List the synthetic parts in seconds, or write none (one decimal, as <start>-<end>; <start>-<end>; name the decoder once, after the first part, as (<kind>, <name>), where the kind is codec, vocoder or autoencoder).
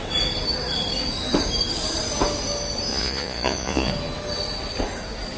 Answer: 2.9-3.9 (vocoder, Vocos)